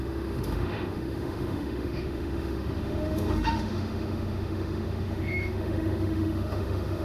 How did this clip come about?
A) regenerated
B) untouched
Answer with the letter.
A